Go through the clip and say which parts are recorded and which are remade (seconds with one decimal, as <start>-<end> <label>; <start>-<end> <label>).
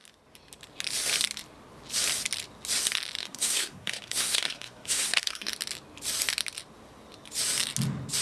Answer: 0.0-3.2 recorded; 3.2-5.5 remade; 5.5-8.2 recorded